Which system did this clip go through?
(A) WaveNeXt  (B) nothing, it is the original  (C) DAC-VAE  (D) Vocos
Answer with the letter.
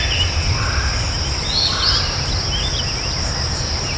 B